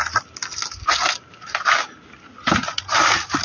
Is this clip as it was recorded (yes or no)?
yes